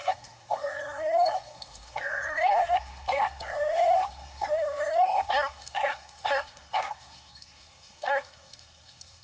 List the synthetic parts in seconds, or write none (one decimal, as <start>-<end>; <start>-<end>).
0.0-9.2

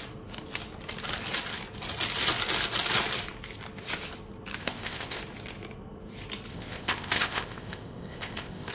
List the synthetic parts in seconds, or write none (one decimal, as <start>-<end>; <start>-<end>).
4.6-5.2; 6.5-8.7

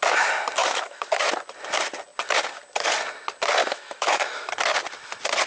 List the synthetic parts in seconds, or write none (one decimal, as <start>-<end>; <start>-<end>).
0.6-1.3; 3.6-4.5

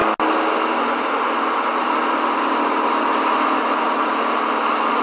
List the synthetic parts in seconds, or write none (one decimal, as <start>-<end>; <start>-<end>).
none